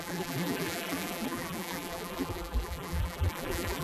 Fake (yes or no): yes